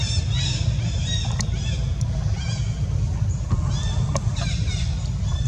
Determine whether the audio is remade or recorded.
recorded